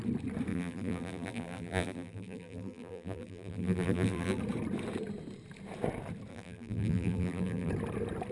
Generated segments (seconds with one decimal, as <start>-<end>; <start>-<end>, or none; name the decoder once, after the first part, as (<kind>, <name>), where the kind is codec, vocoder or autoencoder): 0.5-4.4 (vocoder, BigVGAN v2); 6.3-7.7